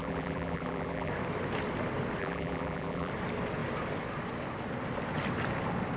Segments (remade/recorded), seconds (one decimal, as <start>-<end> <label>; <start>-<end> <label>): 0.0-1.1 remade; 1.1-2.2 recorded; 2.2-3.1 remade; 3.1-6.0 recorded